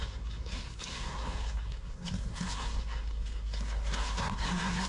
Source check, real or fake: fake